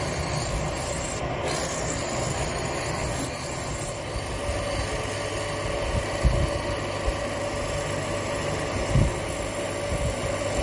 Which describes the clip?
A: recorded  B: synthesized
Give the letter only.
A